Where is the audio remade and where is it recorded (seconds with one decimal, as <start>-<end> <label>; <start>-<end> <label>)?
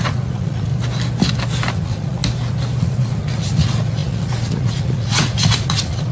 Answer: 0.0-0.7 remade; 0.7-1.7 recorded; 1.7-2.2 remade; 2.2-2.8 recorded; 2.8-6.1 remade